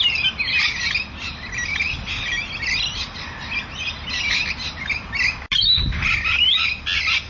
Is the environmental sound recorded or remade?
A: recorded